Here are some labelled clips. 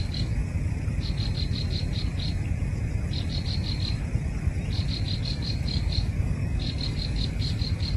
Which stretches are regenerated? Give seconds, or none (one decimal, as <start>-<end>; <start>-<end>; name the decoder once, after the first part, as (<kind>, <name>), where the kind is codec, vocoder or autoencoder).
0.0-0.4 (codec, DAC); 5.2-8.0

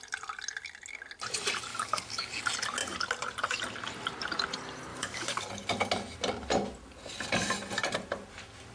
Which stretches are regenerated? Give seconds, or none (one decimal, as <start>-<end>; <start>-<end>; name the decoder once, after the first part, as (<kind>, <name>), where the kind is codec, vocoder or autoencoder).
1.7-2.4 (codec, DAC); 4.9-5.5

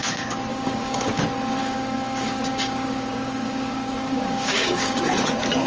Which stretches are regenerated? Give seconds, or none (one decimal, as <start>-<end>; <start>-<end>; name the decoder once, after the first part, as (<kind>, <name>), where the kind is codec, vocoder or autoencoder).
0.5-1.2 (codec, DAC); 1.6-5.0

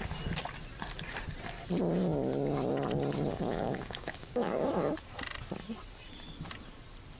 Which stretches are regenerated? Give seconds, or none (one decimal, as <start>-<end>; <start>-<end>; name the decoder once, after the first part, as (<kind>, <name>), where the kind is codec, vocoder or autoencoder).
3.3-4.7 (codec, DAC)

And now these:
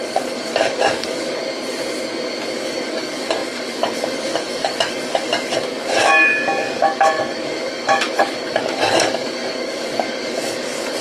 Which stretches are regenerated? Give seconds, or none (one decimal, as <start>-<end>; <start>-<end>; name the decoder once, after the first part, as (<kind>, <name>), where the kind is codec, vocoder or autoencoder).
0.0-1.4 (codec, DAC); 2.5-11.0

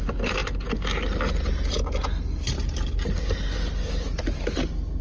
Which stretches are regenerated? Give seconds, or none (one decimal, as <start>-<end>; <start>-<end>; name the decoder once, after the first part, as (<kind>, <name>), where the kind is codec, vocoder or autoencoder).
none

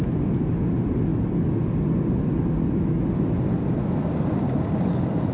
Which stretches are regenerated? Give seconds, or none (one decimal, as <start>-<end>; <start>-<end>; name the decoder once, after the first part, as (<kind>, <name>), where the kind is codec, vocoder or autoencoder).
none

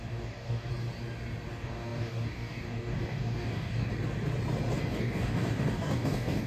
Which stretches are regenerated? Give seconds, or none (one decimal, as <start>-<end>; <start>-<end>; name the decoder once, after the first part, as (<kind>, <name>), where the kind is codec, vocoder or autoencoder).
0.0-0.7 (codec, DAC); 1.5-3.9; 5.0-6.5